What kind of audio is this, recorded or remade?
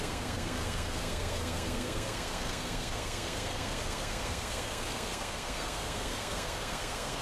remade